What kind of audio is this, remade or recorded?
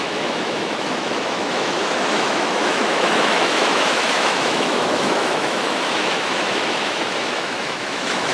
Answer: remade